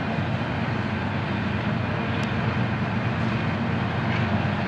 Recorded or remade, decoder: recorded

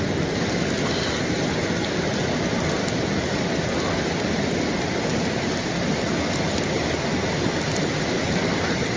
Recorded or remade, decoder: recorded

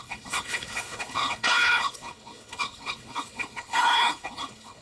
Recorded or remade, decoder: remade, codec, HILCodec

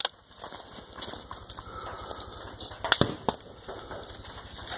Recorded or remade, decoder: recorded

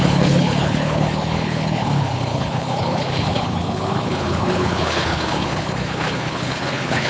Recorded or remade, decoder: remade, codec, HILCodec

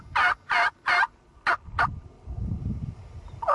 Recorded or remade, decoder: recorded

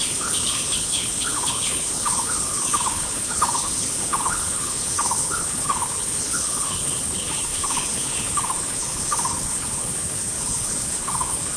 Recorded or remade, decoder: remade, codec, HILCodec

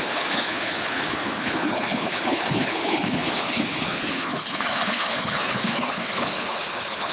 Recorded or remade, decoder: remade, codec, HILCodec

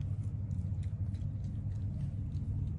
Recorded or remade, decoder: recorded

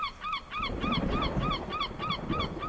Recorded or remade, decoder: recorded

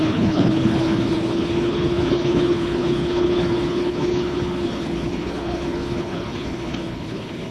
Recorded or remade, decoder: remade, codec, HILCodec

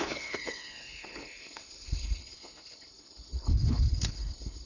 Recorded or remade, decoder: remade, codec, HILCodec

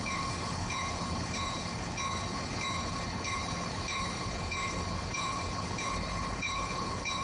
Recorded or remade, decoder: remade, codec, HILCodec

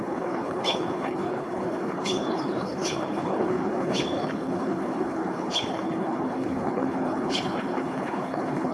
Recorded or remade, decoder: remade, codec, HILCodec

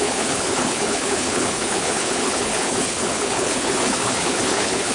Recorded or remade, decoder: remade, codec, HILCodec